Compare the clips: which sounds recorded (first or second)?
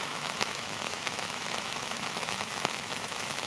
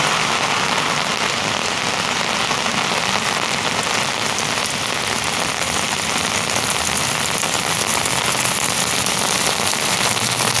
second